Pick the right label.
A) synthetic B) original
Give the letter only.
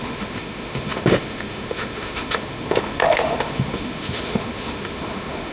A